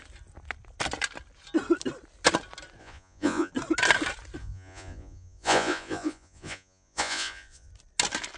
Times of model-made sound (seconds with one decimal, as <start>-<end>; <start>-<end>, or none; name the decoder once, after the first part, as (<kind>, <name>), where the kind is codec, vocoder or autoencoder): 2.8-3.5 (vocoder, Vocos); 4.4-7.7